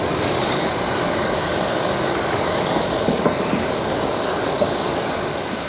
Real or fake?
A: fake